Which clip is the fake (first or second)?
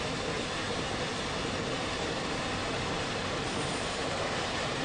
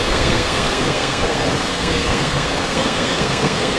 second